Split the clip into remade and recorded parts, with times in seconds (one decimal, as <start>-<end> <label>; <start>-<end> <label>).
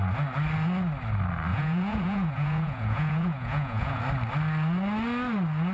0.0-1.5 recorded; 1.5-4.0 remade; 4.0-5.7 recorded